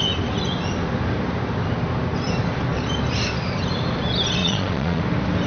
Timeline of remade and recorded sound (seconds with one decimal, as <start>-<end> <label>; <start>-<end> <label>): 0.0-4.4 recorded; 4.4-5.0 remade; 5.0-5.5 recorded